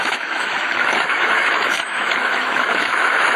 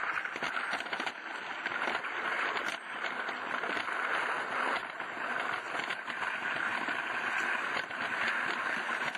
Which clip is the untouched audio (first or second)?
second